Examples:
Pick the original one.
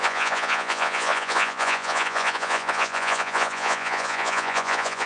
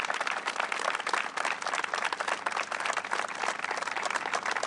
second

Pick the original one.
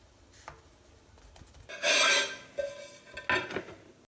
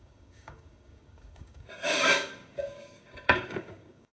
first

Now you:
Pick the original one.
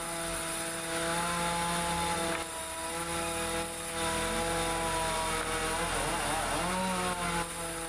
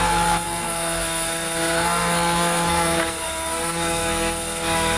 first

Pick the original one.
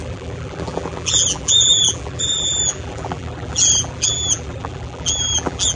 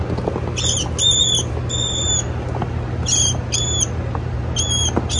second